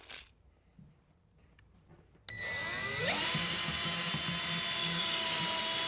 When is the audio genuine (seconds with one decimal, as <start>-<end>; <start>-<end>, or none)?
0.0-3.4; 4.1-4.8; 5.4-5.9